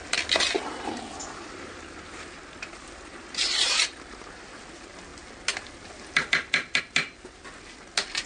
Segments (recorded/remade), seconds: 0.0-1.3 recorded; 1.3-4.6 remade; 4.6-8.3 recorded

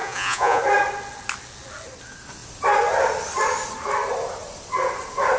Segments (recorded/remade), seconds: 0.0-0.6 remade; 0.6-5.4 recorded